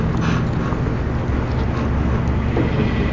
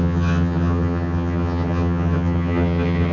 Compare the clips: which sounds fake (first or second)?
second